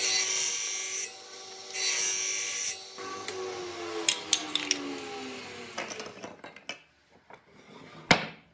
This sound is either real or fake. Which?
real